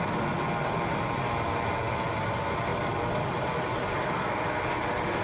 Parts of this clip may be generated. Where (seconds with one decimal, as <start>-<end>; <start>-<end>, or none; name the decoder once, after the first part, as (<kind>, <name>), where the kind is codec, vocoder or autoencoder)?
none